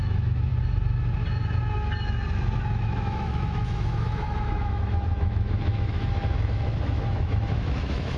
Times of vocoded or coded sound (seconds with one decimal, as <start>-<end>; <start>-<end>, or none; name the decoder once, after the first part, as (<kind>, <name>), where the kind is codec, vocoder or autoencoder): 0.0-0.5 (autoencoder, DAC-VAE); 2.6-8.2